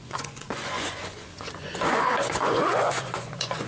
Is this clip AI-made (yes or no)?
yes